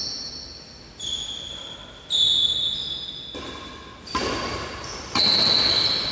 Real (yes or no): yes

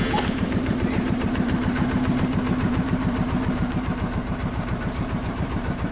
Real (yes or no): no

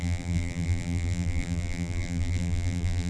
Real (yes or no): no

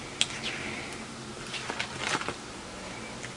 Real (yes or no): yes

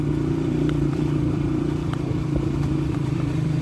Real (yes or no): no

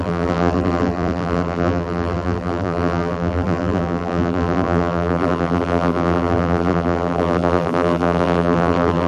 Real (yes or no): no